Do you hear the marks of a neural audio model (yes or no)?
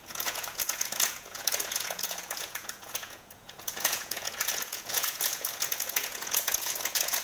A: yes